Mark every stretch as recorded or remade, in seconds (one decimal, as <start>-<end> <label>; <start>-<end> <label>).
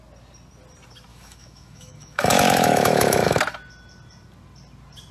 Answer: 0.0-1.1 recorded; 1.1-3.4 remade; 3.4-5.1 recorded